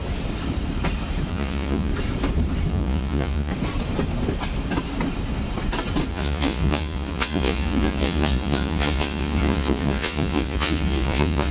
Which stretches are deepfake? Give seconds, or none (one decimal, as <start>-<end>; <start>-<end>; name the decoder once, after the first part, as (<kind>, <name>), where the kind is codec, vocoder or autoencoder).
1.3-1.9 (vocoder, Vocos); 2.7-3.5; 6.1-11.5